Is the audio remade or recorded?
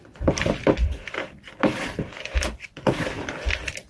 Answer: remade